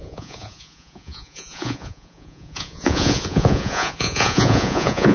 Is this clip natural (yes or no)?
no